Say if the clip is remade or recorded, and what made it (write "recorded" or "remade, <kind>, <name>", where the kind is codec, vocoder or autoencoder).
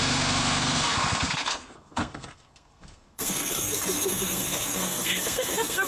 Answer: remade, codec, SNAC